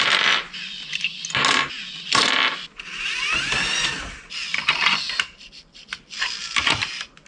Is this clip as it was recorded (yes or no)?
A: yes